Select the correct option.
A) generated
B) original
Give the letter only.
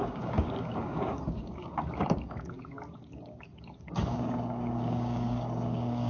A